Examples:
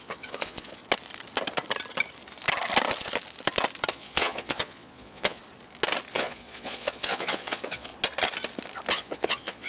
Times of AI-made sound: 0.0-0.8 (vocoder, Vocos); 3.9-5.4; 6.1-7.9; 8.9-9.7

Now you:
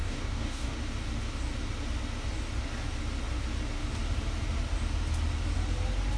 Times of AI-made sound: 0.0-0.8 (codec, DAC)

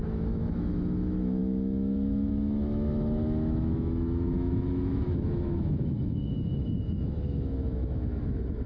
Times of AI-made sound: 0.0-8.7 (autoencoder, DAC-VAE)

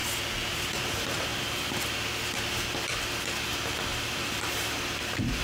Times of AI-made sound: 0.5-1.3 (vocoder, BigVGAN v2); 3.5-5.4

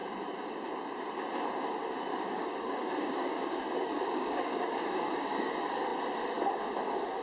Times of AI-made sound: 2.1-5.5 (codec, DAC)

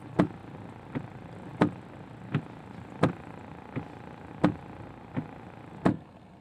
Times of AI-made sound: 5.9-6.4 (codec, SNAC)

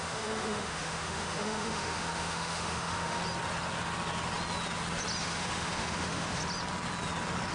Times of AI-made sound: 0.0-3.2 (autoencoder, DAC-VAE); 5.2-6.4

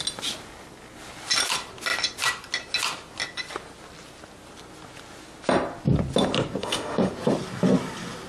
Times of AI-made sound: 6.6-7.1 (autoencoder, DAC-VAE)